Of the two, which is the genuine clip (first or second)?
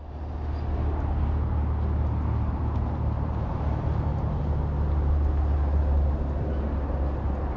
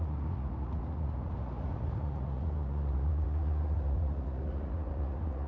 first